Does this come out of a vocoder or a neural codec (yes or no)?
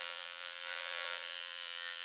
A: yes